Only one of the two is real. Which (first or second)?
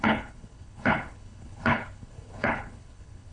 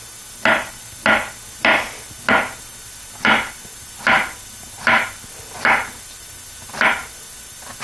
second